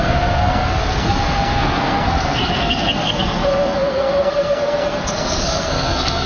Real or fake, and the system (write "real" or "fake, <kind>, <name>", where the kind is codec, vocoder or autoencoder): fake, codec, SNAC